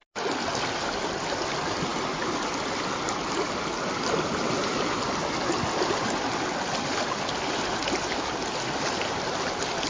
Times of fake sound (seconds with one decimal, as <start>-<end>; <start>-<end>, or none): none